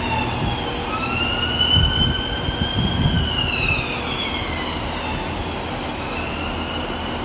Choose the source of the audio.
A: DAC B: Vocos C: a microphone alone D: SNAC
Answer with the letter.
C